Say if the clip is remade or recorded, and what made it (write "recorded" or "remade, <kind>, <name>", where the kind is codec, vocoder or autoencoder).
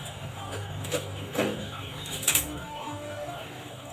remade, codec, DAC